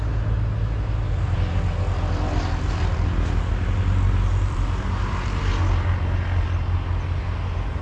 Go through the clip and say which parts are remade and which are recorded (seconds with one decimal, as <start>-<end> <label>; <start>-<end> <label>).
0.0-4.3 recorded; 4.3-5.5 remade; 5.5-7.8 recorded